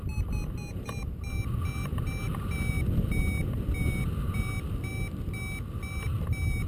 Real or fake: real